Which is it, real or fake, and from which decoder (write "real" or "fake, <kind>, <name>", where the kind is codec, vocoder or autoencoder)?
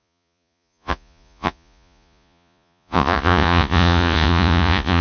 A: fake, vocoder, Vocos